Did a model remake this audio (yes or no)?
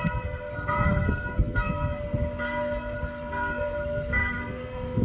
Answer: yes